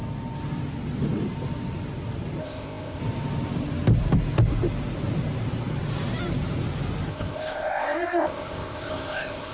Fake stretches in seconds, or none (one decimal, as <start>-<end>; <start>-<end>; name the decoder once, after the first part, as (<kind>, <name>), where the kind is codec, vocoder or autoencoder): 2.4-3.0 (codec, ZipCodec); 7.1-9.5